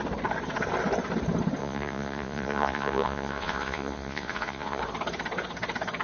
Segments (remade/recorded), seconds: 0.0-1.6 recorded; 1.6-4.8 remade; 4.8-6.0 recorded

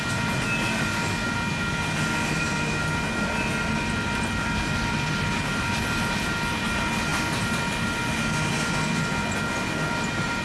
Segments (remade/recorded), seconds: 0.0-10.4 recorded

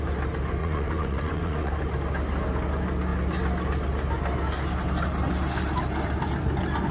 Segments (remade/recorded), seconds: 0.0-0.6 recorded; 0.6-1.7 remade; 1.7-6.9 recorded

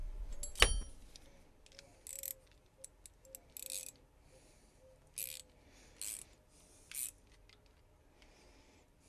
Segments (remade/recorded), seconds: 0.0-9.1 recorded

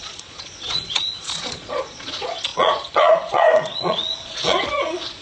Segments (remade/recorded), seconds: 0.0-5.2 remade

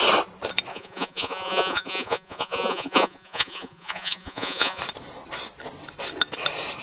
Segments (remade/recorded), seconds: 0.0-0.7 recorded; 0.7-4.8 remade; 4.8-6.8 recorded

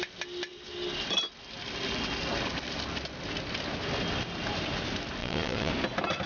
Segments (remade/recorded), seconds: 0.0-5.2 recorded; 5.2-5.7 remade; 5.7-6.3 recorded

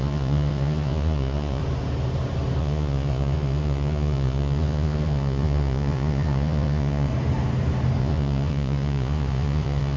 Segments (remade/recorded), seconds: 0.0-1.6 remade; 1.6-2.6 recorded; 2.6-7.1 remade; 7.1-8.0 recorded; 8.0-10.0 remade